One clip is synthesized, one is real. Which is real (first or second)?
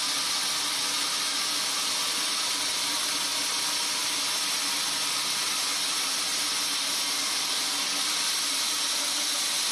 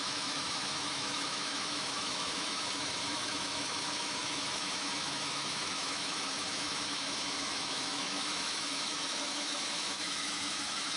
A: first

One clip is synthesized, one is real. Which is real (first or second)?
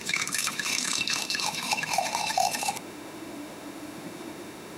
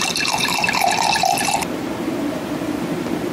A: second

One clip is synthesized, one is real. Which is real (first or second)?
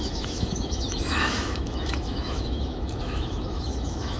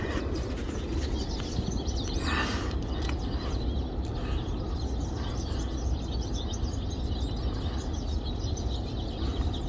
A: second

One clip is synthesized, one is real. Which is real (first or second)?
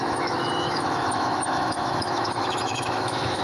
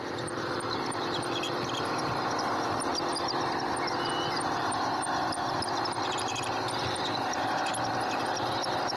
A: second